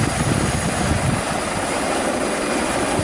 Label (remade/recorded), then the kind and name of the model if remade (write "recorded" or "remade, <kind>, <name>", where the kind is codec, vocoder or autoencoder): remade, vocoder, BigVGAN v2